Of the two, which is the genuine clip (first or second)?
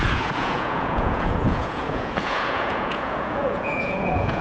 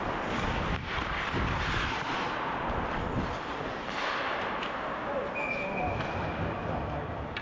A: second